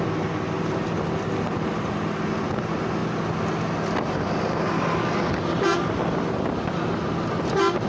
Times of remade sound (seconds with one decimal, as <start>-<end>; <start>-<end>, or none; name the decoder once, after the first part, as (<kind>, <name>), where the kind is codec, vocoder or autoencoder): none